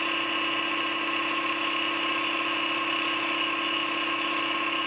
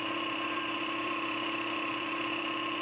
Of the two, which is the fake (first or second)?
second